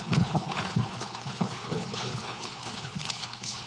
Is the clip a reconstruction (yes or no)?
yes